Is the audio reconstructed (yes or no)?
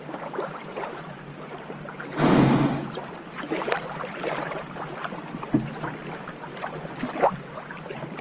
yes